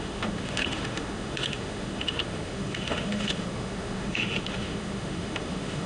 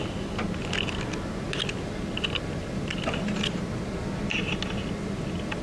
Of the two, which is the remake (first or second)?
first